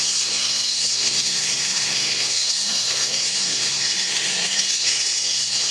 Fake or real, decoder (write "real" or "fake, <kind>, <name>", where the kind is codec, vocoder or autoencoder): fake, codec, SNAC